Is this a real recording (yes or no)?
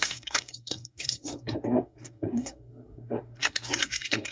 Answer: no